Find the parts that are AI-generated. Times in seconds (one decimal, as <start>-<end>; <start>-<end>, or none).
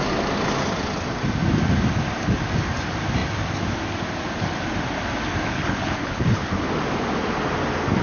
5.5-6.7